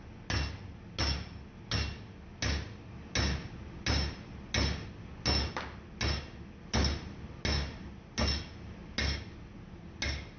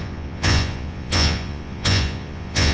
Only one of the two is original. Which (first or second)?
first